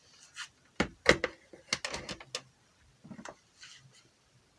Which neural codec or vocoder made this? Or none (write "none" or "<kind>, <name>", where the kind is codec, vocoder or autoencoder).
none